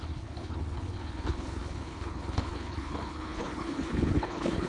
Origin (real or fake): fake